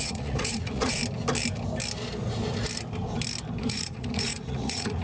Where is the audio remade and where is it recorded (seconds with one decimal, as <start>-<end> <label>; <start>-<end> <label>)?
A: 0.0-1.0 remade; 1.0-3.6 recorded; 3.6-5.0 remade